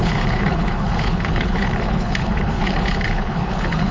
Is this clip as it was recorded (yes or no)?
no